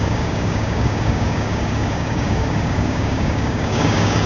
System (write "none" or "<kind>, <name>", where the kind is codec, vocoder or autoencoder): codec, DAC